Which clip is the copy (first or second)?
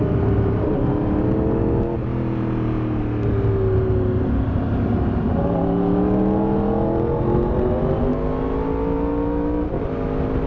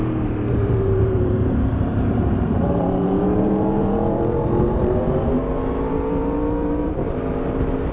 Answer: second